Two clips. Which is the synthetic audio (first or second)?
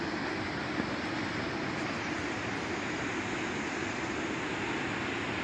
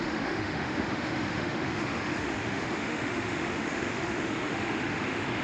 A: second